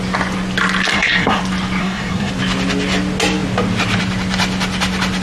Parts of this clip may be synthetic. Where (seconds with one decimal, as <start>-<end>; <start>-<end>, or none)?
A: 0.9-1.4; 1.8-2.3